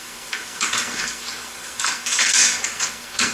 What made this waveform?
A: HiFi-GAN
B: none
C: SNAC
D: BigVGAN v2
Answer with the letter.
C